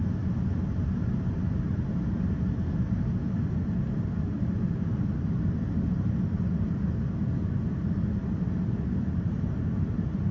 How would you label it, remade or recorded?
recorded